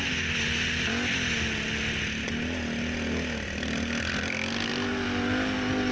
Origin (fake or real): real